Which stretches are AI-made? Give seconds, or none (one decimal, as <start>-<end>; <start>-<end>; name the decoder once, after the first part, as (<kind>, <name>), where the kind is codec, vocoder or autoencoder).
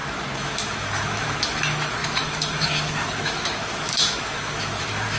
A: 0.0-5.2 (autoencoder, DAC-VAE)